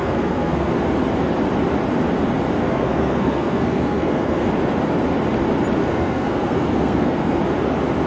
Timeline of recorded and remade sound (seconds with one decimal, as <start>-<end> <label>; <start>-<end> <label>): 0.0-0.7 remade; 0.7-2.6 recorded; 2.6-4.5 remade; 4.5-5.8 recorded; 5.8-7.4 remade; 7.4-8.1 recorded